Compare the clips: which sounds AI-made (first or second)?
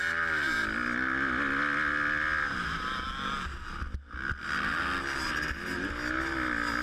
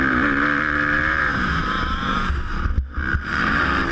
second